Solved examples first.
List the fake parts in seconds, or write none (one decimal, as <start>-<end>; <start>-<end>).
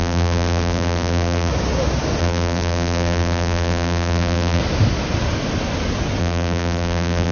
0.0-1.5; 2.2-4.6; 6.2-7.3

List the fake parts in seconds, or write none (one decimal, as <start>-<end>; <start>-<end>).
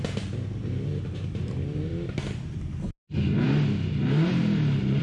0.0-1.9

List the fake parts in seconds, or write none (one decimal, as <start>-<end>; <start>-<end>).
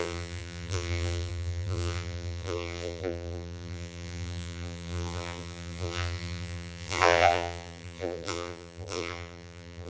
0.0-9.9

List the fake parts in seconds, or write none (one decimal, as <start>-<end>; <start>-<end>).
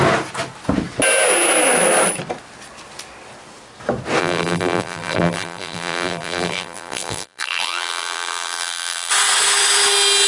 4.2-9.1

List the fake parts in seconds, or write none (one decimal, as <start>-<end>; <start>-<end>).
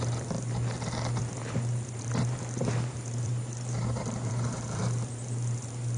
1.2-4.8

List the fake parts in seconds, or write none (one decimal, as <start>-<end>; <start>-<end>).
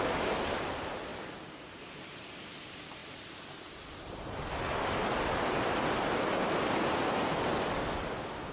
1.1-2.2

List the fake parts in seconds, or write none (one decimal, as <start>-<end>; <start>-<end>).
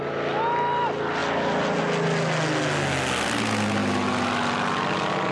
1.2-1.8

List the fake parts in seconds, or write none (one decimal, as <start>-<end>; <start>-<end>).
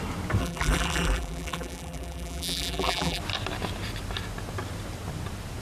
0.4-3.2